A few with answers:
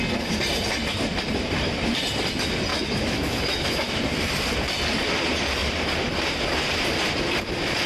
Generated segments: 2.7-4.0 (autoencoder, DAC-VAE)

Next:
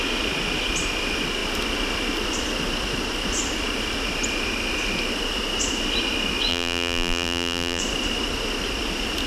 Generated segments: 6.5-7.8 (vocoder, BigVGAN v2)

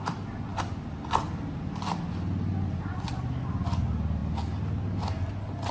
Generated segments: none

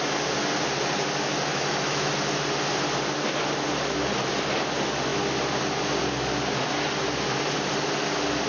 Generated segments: 1.5-2.1 (autoencoder, DAC-VAE)

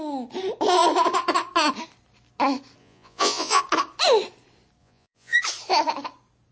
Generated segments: 2.8-3.6 (vocoder, Vocos); 4.8-5.4

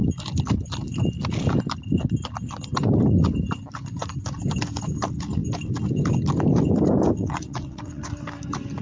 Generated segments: 7.2-8.0 (vocoder, WaveNeXt)

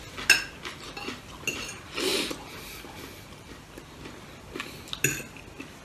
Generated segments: none

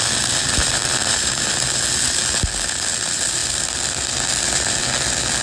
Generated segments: 0.4-1.5 (vocoder, BigVGAN v2); 3.4-4.8